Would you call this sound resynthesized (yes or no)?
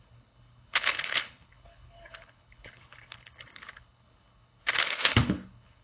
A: yes